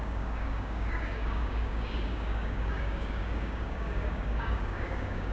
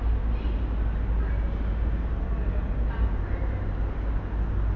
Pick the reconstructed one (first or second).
first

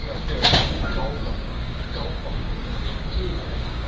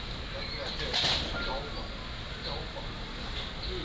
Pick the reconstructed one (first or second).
first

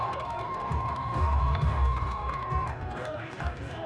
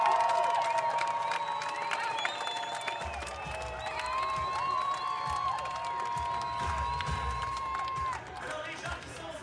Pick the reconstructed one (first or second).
first